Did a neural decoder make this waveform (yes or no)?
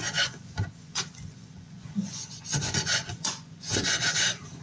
yes